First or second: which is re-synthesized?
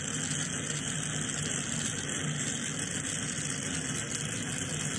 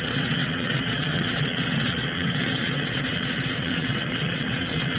second